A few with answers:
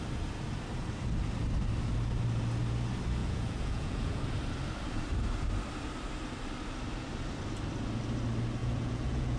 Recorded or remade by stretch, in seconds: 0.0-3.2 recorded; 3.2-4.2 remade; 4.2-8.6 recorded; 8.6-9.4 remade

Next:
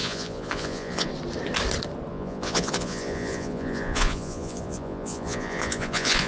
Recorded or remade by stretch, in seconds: 0.0-1.1 remade; 1.1-2.1 recorded; 2.1-6.3 remade

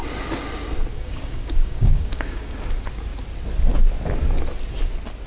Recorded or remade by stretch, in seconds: 0.0-0.9 recorded; 0.9-2.5 remade; 2.5-5.3 recorded

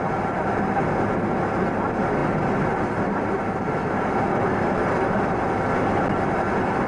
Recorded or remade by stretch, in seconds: 0.0-6.9 recorded

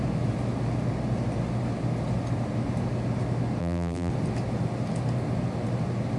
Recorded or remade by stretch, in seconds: 0.0-3.6 recorded; 3.6-4.1 remade; 4.1-6.2 recorded

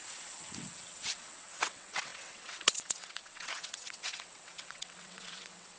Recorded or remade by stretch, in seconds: 0.0-5.8 remade

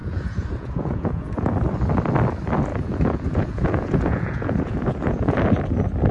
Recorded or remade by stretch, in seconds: 0.0-1.5 remade; 1.5-2.7 recorded; 2.7-5.4 remade; 5.4-6.1 recorded